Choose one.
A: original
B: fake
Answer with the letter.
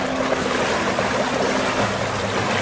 A